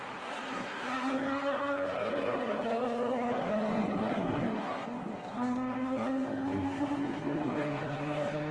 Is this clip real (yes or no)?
no